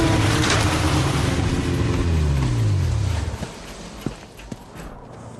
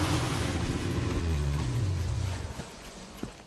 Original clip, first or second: first